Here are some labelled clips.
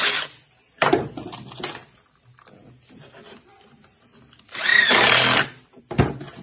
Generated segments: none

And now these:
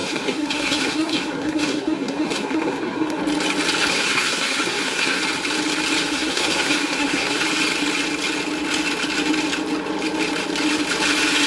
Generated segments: 0.0-3.2 (codec, SNAC); 3.9-5.2; 6.1-7.4

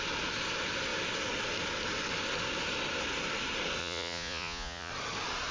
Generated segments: 3.8-4.9 (vocoder, Vocos)

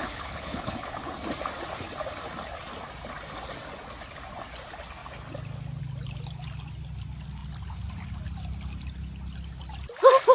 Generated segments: 0.0-1.1 (codec, HILCodec)

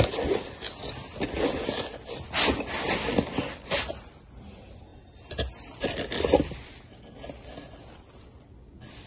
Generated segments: none

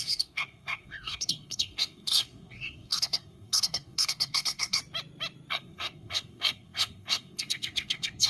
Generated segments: 0.0-4.8 (codec, SNAC); 5.5-8.3